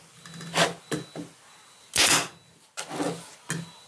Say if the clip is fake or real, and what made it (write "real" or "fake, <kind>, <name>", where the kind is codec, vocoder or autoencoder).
real